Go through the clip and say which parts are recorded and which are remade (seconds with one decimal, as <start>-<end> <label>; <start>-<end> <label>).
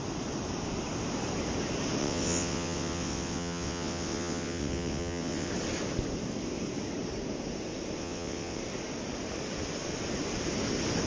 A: 0.0-2.0 recorded; 2.0-5.5 remade; 5.5-8.0 recorded; 8.0-8.6 remade; 8.6-11.1 recorded